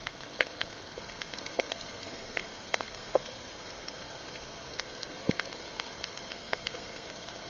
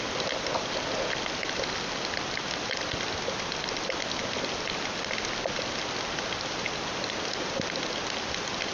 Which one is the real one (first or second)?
second